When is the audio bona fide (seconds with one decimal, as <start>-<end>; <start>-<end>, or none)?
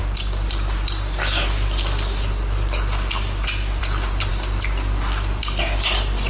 0.0-6.3